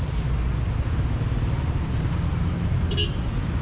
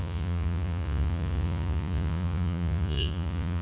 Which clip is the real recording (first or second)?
first